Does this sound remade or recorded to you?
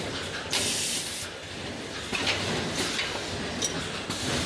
recorded